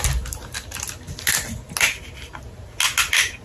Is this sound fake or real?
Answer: real